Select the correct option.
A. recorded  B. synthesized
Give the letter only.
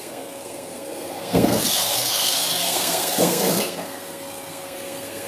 B